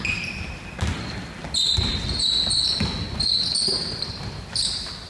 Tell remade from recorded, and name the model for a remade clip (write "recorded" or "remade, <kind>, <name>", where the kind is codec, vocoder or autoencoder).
recorded